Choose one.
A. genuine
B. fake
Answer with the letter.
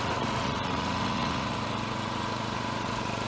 B